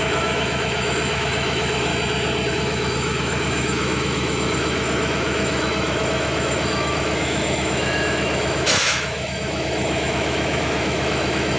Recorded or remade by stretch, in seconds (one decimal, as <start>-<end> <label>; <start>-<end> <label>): 0.0-1.9 remade; 1.9-2.5 recorded; 2.5-11.6 remade